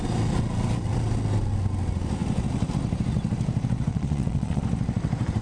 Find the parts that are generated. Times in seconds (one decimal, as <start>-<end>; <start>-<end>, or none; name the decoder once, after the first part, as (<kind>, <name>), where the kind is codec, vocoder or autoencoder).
3.9-4.6 (vocoder, Vocos)

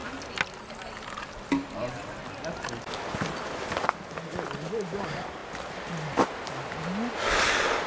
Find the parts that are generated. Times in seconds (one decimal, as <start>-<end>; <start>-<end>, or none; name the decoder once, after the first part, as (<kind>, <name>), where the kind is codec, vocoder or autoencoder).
none